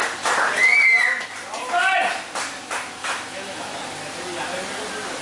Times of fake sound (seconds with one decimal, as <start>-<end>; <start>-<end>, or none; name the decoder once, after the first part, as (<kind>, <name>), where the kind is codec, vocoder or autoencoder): 3.0-3.8 (autoencoder, DAC-VAE)